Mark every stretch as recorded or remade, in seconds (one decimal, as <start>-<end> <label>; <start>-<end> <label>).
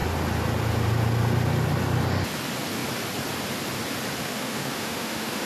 0.0-4.2 recorded; 4.2-5.5 remade